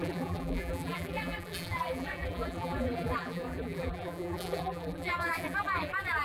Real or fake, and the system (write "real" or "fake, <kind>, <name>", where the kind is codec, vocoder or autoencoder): fake, vocoder, BigVGAN v2